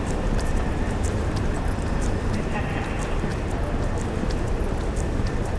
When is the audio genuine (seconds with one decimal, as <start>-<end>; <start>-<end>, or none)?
3.3-5.1